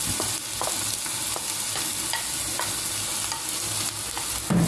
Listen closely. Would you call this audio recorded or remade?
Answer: recorded